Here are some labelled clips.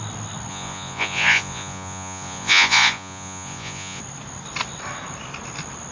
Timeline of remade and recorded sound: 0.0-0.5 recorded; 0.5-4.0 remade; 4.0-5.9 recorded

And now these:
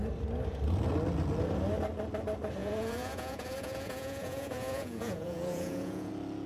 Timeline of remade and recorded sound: 0.0-2.6 recorded; 2.6-6.1 remade; 6.1-6.5 recorded

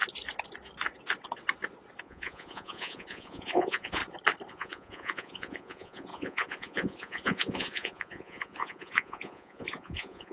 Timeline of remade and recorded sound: 0.0-2.0 recorded; 2.0-4.0 remade; 4.0-4.5 recorded; 4.5-10.3 remade

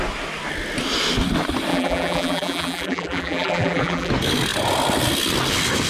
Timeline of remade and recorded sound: 0.0-1.7 recorded; 1.7-4.1 remade; 4.1-5.9 recorded

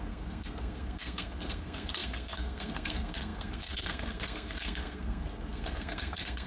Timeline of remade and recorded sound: 0.0-6.5 remade